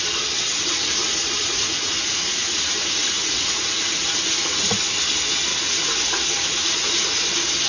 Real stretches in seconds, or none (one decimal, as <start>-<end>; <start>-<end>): 0.0-0.5; 5.0-5.5; 7.1-7.7